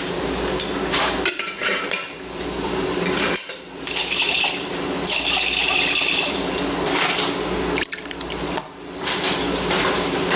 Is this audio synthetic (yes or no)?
yes